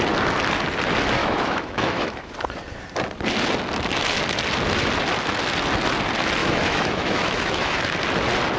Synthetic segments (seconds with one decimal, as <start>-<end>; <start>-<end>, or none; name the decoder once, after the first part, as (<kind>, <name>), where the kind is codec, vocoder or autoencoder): 1.2-2.3 (autoencoder, DAC-VAE); 6.4-7.8